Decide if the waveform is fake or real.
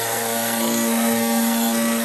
fake